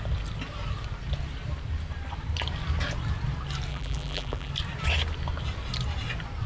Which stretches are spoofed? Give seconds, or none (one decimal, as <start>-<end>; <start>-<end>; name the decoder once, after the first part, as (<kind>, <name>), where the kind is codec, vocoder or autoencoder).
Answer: 3.7-4.5 (vocoder, BigVGAN v2)